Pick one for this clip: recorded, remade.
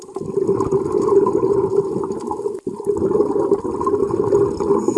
recorded